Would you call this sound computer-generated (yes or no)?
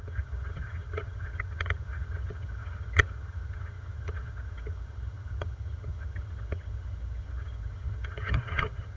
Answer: yes